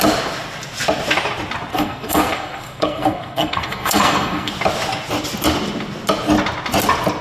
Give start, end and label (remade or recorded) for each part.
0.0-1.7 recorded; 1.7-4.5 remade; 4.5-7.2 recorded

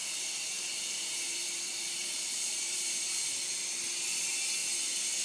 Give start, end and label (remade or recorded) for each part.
0.0-3.1 remade; 3.1-5.2 recorded

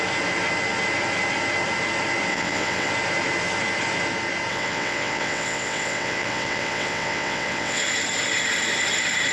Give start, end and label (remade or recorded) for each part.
0.0-2.3 recorded; 2.3-2.9 remade; 2.9-4.5 recorded; 4.5-7.8 remade; 7.8-9.3 recorded

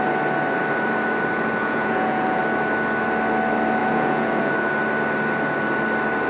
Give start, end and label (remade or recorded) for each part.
0.0-1.6 recorded; 1.6-2.4 remade; 2.4-3.8 recorded; 3.8-4.5 remade; 4.5-6.3 recorded

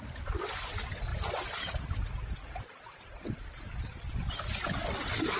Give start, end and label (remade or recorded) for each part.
0.0-5.4 recorded

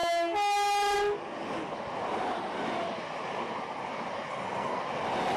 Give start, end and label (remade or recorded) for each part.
0.0-4.3 recorded; 4.3-4.8 remade; 4.8-5.4 recorded

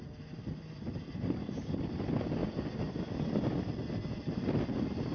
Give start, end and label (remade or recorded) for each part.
0.0-5.1 recorded